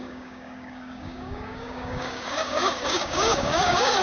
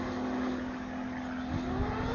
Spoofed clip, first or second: first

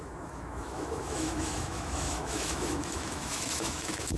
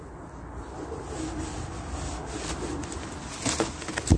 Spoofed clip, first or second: first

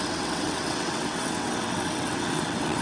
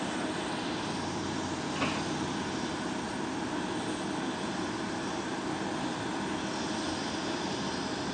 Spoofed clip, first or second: first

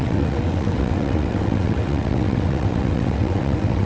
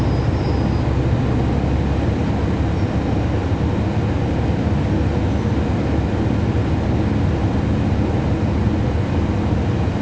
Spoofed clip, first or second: first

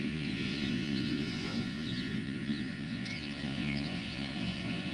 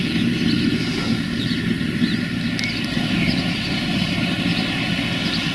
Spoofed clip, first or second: first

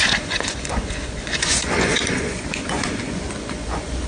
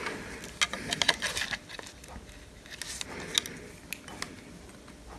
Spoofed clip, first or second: first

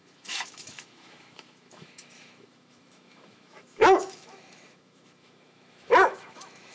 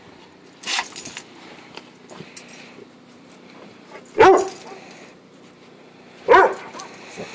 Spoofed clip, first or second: first